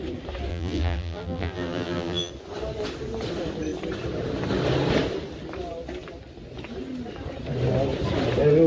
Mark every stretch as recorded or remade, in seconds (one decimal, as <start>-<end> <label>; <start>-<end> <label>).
0.0-0.5 recorded; 0.5-2.3 remade; 2.3-8.7 recorded

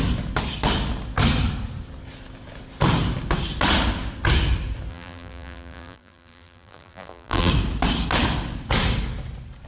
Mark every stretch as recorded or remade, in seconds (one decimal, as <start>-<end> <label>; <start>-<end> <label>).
0.0-4.9 recorded; 4.9-7.5 remade; 7.5-9.7 recorded

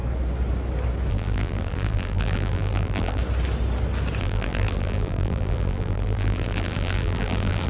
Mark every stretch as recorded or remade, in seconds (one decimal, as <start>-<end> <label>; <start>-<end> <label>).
0.0-1.1 recorded; 1.1-3.2 remade; 3.2-4.2 recorded; 4.2-7.7 remade

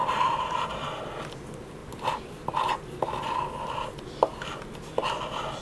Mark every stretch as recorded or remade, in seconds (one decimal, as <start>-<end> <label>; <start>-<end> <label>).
0.0-0.6 remade; 0.6-5.6 recorded

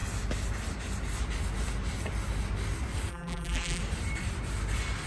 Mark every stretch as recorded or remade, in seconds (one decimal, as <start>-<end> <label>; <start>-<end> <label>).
0.0-3.1 recorded; 3.1-3.8 remade; 3.8-5.1 recorded

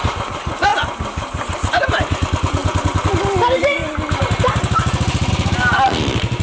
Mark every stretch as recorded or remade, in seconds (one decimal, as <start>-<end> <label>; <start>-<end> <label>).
0.0-0.7 remade; 0.7-1.5 recorded; 1.5-3.8 remade; 3.8-5.3 recorded; 5.3-6.4 remade

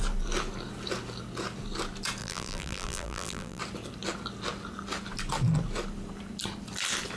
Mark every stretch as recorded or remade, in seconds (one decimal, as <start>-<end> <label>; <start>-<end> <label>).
0.0-2.2 recorded; 2.2-3.6 remade; 3.6-7.2 recorded

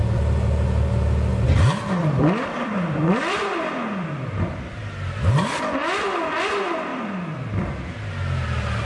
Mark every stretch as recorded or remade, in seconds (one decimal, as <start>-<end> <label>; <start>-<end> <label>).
0.0-2.0 recorded; 2.0-4.8 remade; 4.8-6.9 recorded; 6.9-8.1 remade; 8.1-8.9 recorded